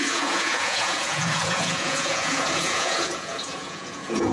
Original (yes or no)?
no